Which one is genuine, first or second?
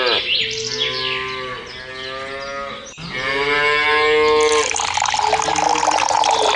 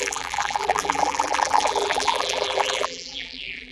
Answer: first